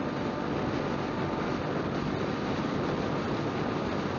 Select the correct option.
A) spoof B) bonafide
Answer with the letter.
B